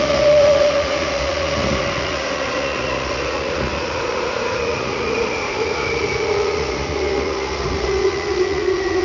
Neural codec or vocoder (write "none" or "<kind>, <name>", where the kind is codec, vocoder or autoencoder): vocoder, Vocos